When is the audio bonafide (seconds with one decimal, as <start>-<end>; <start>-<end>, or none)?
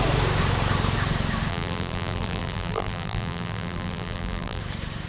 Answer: 0.0-1.5; 4.6-5.1